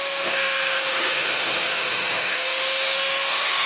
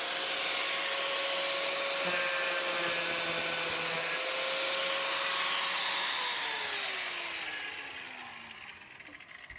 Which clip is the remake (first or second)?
first